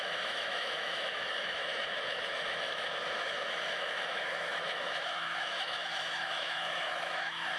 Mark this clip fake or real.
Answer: fake